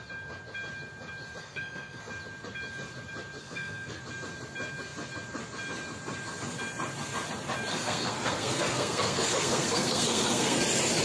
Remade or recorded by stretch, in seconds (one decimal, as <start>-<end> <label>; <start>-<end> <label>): 0.0-1.4 recorded; 1.4-2.0 remade; 2.0-3.4 recorded; 3.4-4.0 remade; 4.0-7.7 recorded; 7.7-10.6 remade; 10.6-11.0 recorded